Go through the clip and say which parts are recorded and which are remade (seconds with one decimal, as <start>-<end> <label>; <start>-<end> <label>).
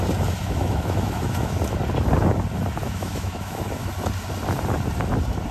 0.0-0.4 recorded; 0.4-1.6 remade; 1.6-2.8 recorded; 2.8-3.6 remade; 3.6-5.5 recorded